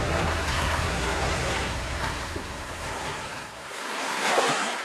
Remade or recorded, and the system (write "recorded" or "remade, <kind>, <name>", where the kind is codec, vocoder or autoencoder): remade, codec, SNAC